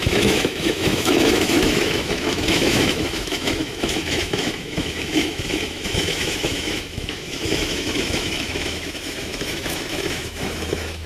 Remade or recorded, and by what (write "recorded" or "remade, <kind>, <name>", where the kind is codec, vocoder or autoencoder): remade, autoencoder, DAC-VAE